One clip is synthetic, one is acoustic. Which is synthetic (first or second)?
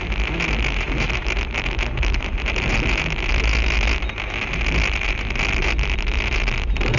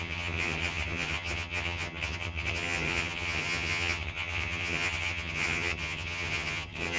second